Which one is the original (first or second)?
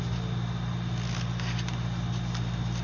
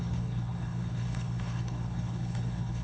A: first